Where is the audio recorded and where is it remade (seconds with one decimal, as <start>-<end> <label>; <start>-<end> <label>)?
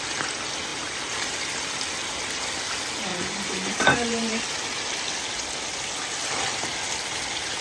0.0-0.7 recorded; 0.7-1.7 remade; 1.7-3.1 recorded; 3.1-4.4 remade; 4.4-7.6 recorded